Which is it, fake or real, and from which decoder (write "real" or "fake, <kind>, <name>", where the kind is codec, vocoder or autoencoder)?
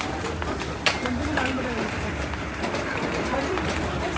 fake, vocoder, BigVGAN v2